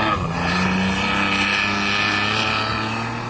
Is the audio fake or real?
real